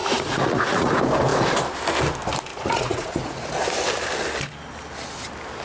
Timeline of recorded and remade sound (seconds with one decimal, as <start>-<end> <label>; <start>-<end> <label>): 0.0-0.9 remade; 0.9-2.5 recorded; 2.5-3.5 remade; 3.5-5.6 recorded